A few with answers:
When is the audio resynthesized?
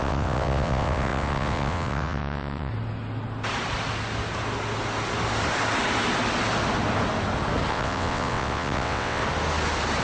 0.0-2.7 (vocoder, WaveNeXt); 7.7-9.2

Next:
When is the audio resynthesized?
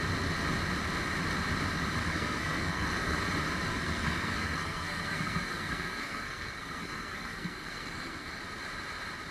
2.0-3.2 (codec, SNAC); 3.7-8.4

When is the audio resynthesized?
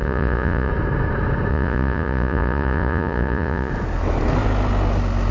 0.0-0.7 (vocoder, Vocos); 1.5-3.7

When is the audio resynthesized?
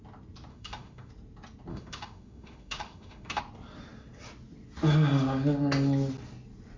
0.5-1.1 (autoencoder, DAC-VAE); 1.7-3.4